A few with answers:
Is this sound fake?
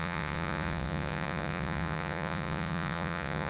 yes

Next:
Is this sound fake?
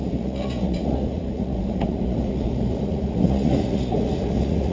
yes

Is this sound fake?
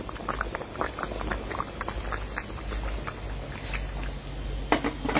no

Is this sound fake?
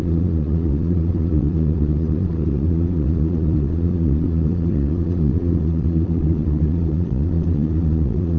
yes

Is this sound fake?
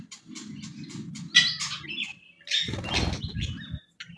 no